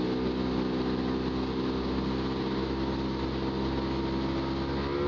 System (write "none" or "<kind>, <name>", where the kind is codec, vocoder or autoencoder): none